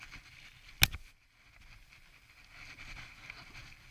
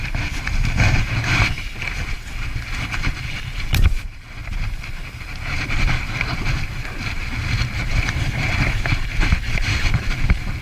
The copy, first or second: second